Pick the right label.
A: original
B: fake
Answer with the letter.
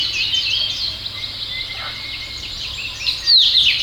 A